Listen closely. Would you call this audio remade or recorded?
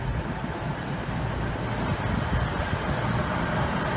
recorded